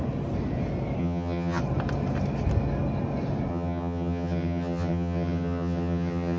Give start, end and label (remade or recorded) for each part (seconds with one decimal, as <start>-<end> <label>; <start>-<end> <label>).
0.0-1.0 recorded; 1.0-1.6 remade; 1.6-3.5 recorded; 3.5-6.4 remade